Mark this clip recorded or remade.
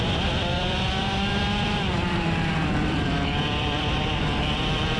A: remade